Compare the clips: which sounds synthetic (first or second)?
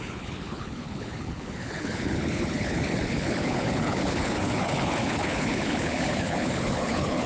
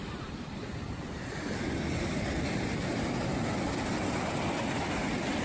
first